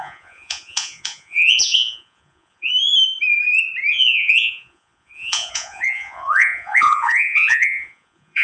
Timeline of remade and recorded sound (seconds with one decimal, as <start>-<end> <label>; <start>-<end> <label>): 0.0-2.7 remade; 2.7-3.9 recorded; 3.9-8.4 remade